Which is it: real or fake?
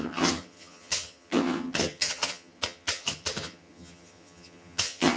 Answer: fake